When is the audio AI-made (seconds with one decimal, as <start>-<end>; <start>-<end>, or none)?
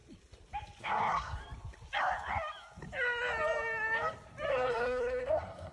0.8-1.4; 4.5-5.7